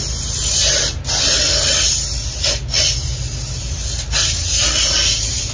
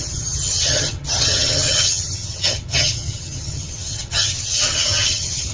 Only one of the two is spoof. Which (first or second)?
second